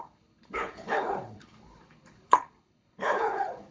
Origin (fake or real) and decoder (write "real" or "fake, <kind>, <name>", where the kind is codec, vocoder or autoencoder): fake, codec, HILCodec